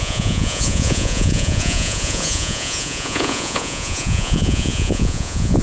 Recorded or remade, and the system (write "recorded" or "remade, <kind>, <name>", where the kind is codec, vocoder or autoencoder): remade, vocoder, Vocos